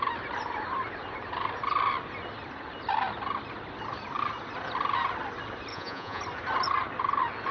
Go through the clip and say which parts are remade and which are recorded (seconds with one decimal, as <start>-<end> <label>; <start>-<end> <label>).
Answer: 0.0-5.7 recorded; 5.7-6.2 remade; 6.2-7.5 recorded